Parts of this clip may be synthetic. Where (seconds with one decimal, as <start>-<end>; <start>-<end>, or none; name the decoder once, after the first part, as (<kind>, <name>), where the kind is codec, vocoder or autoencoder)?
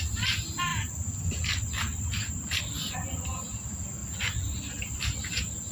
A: none